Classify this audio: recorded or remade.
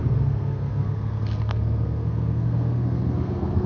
remade